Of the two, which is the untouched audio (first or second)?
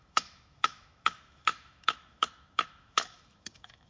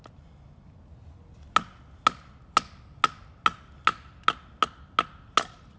second